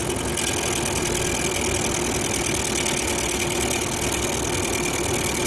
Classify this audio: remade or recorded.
recorded